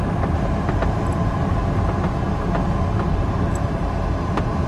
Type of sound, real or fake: real